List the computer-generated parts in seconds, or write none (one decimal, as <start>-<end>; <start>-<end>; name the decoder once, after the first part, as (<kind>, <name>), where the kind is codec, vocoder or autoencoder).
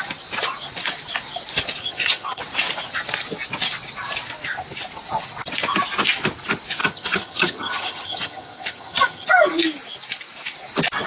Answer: 1.8-2.4 (vocoder, HiFi-GAN); 6.8-9.3